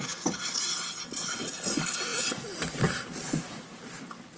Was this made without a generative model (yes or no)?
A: yes